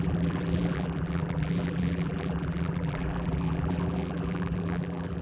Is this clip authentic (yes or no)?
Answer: no